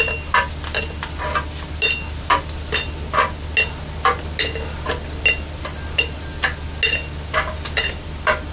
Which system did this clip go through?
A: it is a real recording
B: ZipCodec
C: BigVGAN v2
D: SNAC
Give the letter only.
A